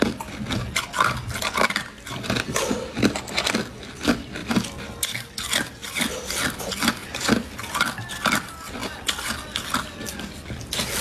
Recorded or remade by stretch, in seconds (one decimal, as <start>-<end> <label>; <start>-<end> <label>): 0.0-11.0 recorded